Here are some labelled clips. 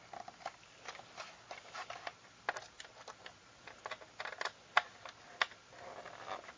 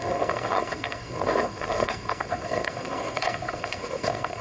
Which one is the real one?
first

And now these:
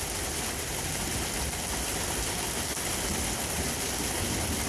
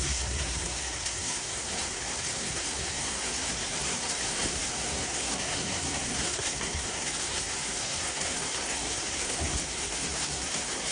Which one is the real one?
first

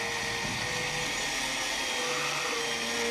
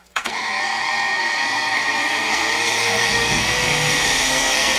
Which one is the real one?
first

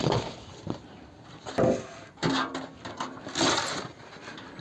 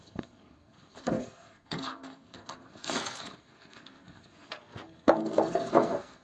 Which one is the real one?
first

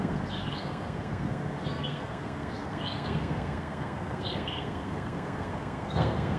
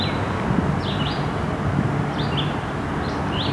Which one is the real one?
second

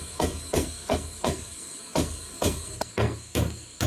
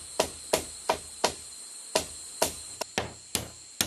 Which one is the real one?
second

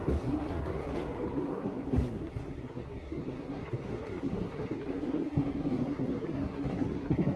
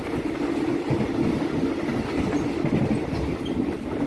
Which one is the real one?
second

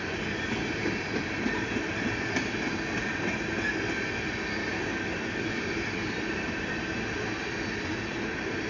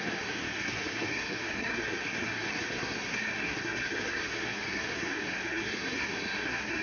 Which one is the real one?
first